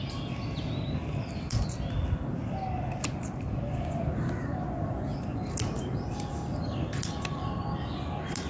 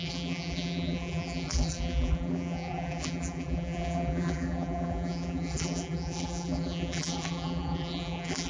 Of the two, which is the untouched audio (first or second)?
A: first